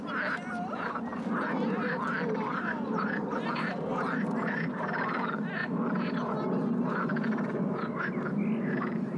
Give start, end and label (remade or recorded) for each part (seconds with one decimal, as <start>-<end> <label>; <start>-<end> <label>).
0.0-9.2 recorded